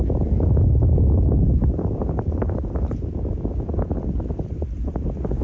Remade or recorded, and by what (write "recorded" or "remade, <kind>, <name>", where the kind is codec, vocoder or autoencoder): recorded